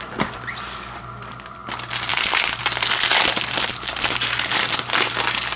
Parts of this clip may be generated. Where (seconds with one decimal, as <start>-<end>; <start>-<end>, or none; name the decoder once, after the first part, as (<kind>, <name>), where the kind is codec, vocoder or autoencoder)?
2.1-2.6 (vocoder, BigVGAN v2)